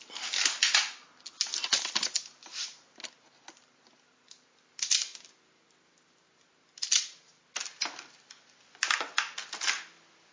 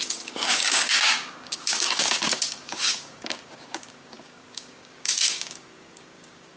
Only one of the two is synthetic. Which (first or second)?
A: second